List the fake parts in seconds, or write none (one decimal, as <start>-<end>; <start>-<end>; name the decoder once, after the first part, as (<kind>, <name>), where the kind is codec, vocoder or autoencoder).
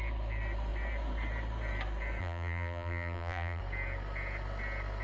2.2-3.6 (vocoder, BigVGAN v2)